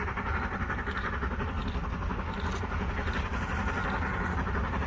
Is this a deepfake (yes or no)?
no